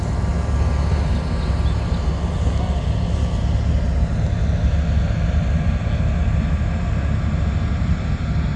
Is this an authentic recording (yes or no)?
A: yes